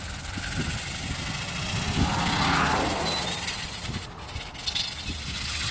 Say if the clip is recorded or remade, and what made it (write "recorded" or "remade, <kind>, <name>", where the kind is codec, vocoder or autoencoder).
recorded